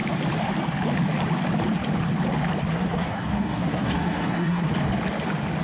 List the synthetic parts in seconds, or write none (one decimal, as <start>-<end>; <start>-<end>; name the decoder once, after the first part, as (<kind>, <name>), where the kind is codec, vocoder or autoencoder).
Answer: 2.7-4.7 (codec, SNAC)